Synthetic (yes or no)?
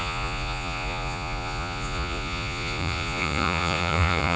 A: yes